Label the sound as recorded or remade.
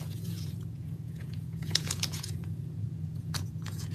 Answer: remade